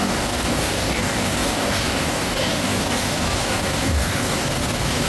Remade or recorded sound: remade